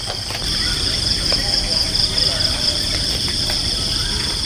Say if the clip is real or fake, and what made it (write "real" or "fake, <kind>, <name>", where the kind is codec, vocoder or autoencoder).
fake, vocoder, BigVGAN v2